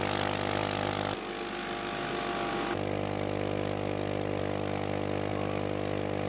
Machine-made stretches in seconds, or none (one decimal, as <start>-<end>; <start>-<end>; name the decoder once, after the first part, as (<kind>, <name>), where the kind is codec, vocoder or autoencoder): none